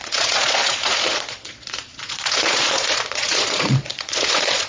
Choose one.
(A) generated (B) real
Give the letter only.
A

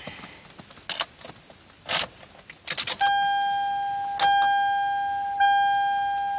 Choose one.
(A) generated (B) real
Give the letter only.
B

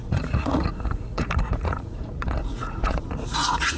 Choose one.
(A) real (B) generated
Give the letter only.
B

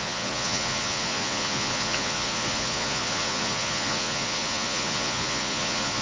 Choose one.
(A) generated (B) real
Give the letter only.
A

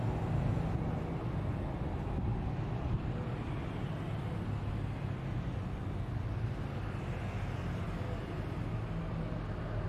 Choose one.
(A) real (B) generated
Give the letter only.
A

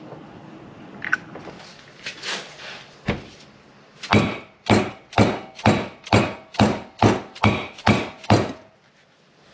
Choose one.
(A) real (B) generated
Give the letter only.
A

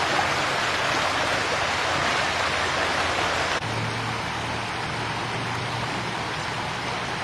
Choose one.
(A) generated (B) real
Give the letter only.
B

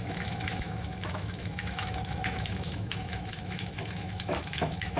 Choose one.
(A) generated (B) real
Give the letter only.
A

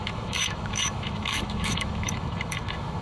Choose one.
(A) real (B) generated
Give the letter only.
B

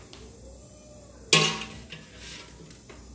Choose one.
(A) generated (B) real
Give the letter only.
B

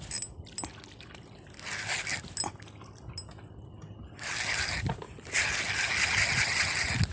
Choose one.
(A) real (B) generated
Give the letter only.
A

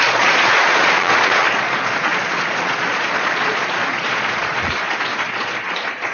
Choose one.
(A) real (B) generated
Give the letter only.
B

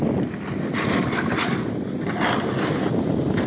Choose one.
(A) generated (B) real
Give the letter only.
B